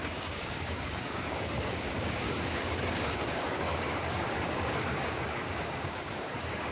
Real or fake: fake